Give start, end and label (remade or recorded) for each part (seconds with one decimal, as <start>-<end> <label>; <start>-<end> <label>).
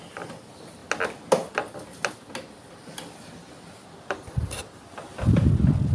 0.0-5.9 recorded